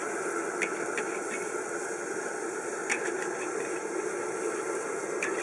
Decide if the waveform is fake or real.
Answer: real